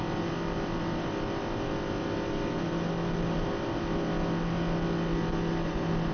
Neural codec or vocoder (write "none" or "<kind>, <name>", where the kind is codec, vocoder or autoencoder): none